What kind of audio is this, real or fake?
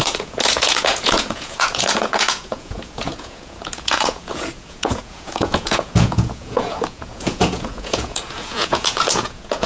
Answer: fake